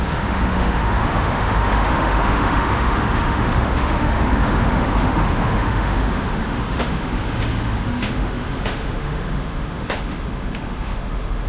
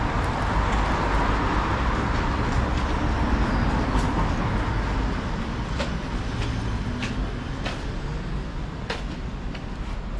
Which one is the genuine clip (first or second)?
second